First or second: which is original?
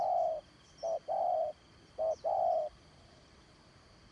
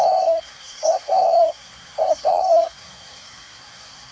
first